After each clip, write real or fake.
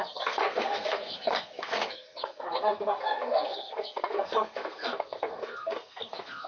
fake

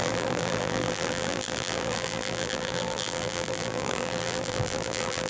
fake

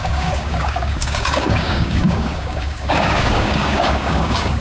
fake